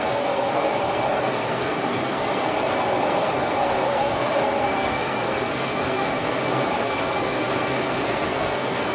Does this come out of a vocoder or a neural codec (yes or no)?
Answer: yes